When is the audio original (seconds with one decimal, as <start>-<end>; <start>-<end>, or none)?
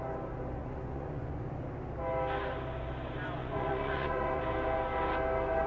0.0-0.6; 1.4-3.4; 4.4-5.7